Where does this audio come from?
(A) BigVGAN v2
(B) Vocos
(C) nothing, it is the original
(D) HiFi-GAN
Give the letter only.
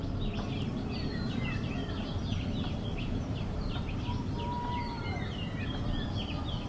C